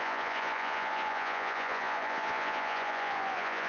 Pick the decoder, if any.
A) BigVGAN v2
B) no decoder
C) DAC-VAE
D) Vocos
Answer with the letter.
D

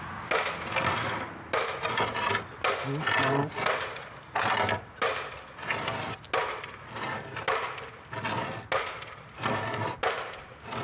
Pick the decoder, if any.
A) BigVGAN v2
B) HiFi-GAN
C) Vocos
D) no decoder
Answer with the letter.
D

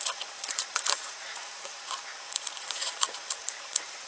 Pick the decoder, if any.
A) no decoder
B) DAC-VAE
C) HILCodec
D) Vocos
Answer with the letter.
D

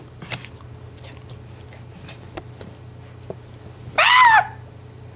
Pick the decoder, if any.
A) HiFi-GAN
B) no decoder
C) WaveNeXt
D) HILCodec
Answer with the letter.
B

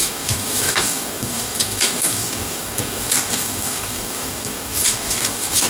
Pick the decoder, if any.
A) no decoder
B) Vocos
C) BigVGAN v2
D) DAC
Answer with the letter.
D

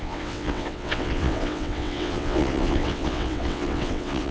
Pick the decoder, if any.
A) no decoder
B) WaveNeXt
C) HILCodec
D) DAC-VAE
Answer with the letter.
B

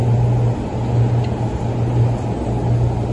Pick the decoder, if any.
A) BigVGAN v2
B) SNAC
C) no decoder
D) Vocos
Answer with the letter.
C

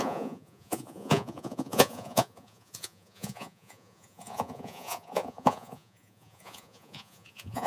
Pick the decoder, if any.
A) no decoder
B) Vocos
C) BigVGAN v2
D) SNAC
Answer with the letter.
B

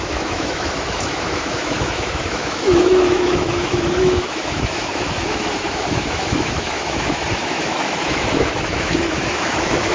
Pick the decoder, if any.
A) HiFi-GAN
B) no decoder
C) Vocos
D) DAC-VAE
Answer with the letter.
D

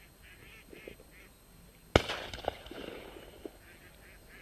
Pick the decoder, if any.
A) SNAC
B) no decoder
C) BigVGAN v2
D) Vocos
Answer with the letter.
B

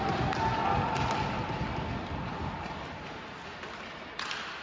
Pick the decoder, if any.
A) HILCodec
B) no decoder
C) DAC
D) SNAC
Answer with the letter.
B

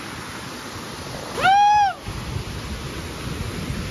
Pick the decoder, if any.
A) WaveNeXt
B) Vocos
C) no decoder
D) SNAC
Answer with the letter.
C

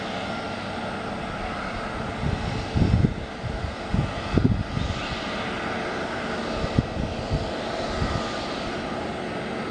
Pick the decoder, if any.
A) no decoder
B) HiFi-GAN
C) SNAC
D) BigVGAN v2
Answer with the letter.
A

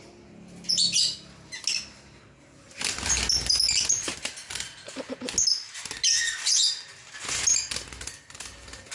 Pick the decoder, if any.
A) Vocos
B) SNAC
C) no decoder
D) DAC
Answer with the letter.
C